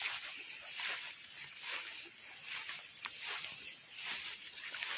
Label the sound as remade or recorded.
recorded